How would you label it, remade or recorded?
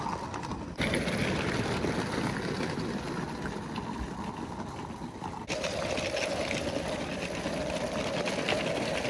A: recorded